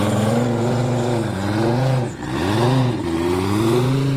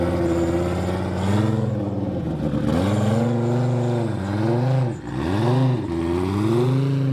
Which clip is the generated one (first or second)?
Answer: first